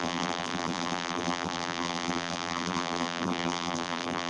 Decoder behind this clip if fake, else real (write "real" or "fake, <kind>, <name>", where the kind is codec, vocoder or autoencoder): fake, vocoder, BigVGAN v2